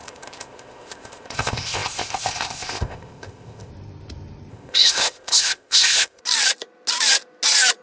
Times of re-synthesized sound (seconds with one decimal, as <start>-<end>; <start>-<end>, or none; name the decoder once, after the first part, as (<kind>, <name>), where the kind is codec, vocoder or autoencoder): 0.0-3.7 (codec, ZipCodec); 4.5-6.2